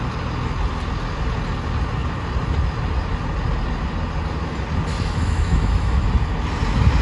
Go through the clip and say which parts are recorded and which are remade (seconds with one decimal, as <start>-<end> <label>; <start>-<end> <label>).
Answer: 0.0-4.9 recorded; 4.9-6.1 remade; 6.1-7.0 recorded